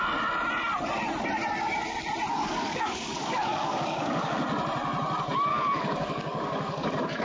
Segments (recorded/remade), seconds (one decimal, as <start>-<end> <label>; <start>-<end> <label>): 0.0-2.3 recorded; 2.3-4.4 remade; 4.4-5.5 recorded; 5.5-7.2 remade